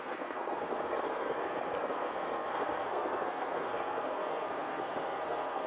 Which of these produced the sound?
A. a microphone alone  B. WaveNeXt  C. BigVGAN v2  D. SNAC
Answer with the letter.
D